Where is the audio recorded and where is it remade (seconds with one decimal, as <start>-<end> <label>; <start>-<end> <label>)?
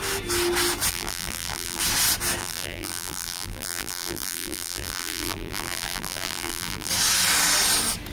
0.0-0.9 recorded; 0.9-1.8 remade; 1.8-2.4 recorded; 2.4-6.9 remade; 6.9-8.1 recorded